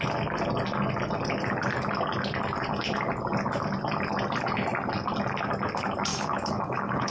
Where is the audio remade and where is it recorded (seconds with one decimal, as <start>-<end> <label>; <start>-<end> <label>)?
0.0-6.1 recorded; 6.1-7.1 remade